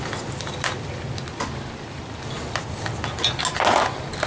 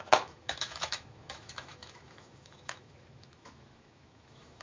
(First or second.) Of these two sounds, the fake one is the second